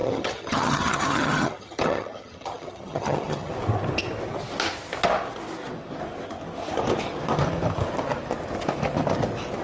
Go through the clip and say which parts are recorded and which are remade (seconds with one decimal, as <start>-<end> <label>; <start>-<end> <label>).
0.0-3.5 remade; 3.5-9.6 recorded